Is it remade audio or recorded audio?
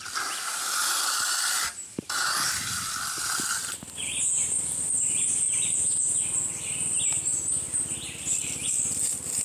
recorded